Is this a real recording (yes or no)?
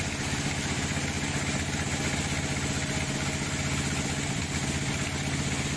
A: yes